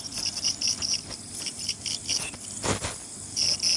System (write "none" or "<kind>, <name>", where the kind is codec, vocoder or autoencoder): none